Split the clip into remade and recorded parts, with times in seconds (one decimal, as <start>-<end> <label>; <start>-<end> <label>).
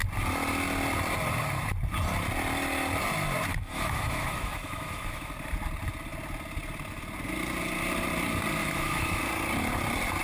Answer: 0.0-3.5 recorded; 3.5-5.3 remade; 5.3-8.6 recorded; 8.6-9.2 remade; 9.2-10.2 recorded